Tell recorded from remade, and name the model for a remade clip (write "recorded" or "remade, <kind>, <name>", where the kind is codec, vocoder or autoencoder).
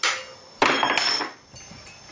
recorded